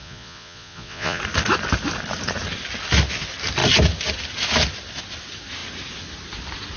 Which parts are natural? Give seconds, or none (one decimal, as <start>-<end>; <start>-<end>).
1.2-6.8